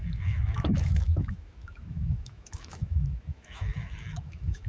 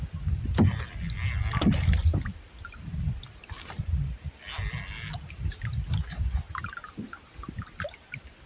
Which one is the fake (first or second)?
first